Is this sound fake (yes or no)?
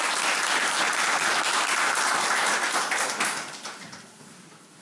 no